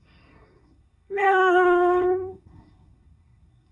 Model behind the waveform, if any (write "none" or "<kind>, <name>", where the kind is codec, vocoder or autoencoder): codec, SNAC